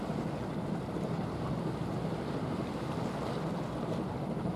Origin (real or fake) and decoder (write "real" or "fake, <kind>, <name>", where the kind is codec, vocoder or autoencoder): real